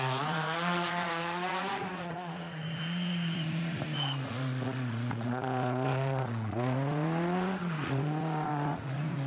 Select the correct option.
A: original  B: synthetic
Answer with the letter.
B